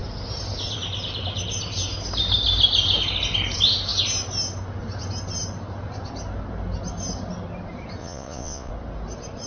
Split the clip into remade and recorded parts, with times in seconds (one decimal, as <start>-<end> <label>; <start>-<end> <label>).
0.0-8.0 recorded; 8.0-8.7 remade; 8.7-9.5 recorded